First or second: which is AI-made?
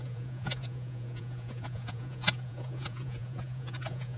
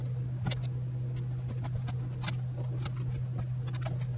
first